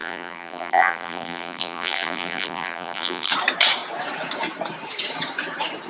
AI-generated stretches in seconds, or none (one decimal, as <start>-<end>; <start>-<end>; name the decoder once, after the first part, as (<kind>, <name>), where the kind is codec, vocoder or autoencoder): 0.0-3.3 (vocoder, BigVGAN v2)